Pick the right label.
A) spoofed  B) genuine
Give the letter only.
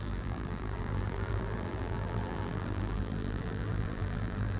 A